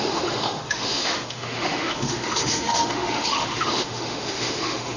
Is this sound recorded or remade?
remade